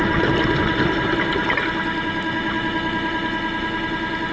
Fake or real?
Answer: real